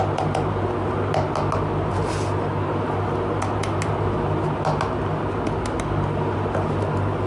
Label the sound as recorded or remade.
recorded